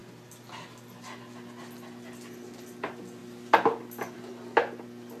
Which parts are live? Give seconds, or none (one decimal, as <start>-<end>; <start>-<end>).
0.0-5.2